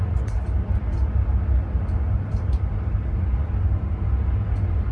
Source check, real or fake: real